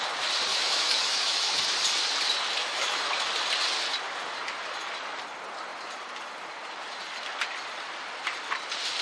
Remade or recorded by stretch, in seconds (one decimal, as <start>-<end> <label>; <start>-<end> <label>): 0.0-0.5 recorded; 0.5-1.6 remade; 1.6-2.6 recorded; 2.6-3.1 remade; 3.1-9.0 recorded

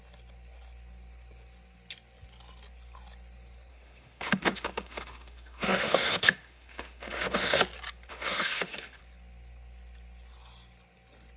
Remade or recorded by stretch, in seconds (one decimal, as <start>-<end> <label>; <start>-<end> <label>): 0.0-3.7 recorded; 3.7-7.6 remade; 7.6-8.1 recorded; 8.1-9.0 remade; 9.0-11.4 recorded

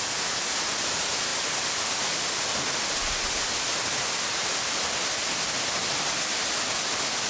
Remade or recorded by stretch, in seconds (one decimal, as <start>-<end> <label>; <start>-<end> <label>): 0.0-7.3 recorded